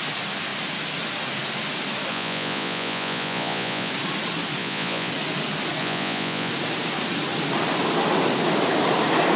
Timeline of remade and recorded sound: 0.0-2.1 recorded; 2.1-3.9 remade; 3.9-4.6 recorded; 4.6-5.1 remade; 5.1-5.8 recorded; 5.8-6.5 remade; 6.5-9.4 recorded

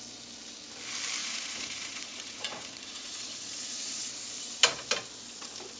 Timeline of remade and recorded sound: 0.0-1.2 recorded; 1.2-4.0 remade; 4.0-5.8 recorded